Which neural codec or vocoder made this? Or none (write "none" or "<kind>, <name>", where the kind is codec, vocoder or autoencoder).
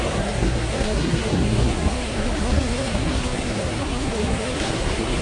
codec, SNAC